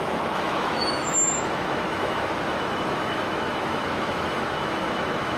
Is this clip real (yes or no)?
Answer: no